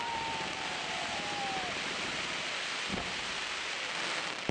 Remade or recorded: remade